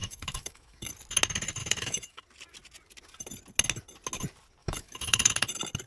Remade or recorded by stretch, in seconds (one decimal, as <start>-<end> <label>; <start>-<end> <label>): 0.0-0.9 remade; 0.9-1.6 recorded; 1.6-2.2 remade; 2.2-4.6 recorded; 4.6-5.3 remade; 5.3-5.9 recorded